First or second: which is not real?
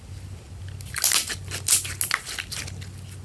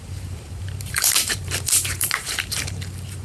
second